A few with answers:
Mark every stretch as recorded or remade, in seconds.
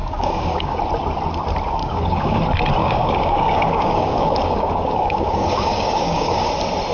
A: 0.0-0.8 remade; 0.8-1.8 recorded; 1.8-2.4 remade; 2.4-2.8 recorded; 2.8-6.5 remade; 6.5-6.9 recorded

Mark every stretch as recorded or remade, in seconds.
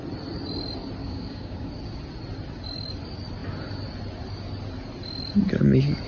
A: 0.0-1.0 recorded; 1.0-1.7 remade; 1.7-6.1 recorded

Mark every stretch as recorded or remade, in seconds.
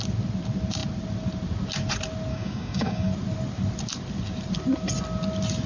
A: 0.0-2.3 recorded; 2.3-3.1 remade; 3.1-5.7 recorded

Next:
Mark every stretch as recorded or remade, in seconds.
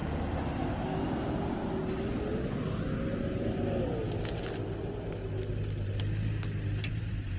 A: 0.0-0.9 recorded; 0.9-1.6 remade; 1.6-7.4 recorded